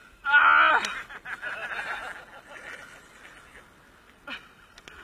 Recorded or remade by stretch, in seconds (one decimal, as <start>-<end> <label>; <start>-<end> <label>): 0.0-5.0 recorded

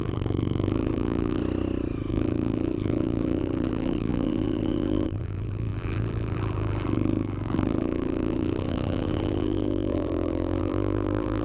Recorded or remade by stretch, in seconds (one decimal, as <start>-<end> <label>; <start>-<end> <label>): 0.0-1.4 remade; 1.4-2.1 recorded; 2.1-11.4 remade